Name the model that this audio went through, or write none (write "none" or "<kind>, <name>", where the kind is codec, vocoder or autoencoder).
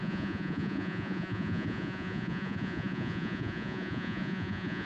vocoder, Vocos